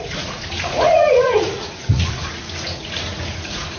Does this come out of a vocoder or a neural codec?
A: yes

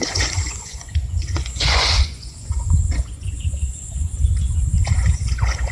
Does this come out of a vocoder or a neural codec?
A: yes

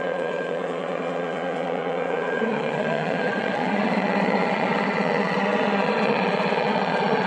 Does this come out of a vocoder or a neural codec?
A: yes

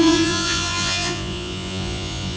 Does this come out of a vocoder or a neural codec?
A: yes